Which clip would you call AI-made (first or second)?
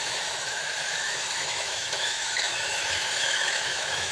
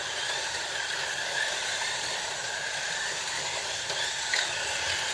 first